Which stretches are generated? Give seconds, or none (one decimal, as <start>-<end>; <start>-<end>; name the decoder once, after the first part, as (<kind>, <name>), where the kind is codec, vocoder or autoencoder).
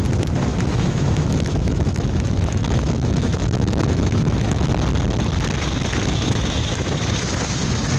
0.5-4.7 (autoencoder, DAC-VAE); 6.0-7.0